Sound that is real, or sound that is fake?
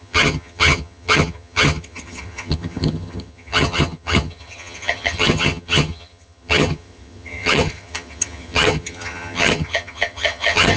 fake